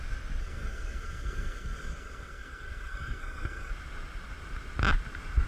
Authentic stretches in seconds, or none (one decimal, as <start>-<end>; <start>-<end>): 0.0-0.4; 3.7-5.5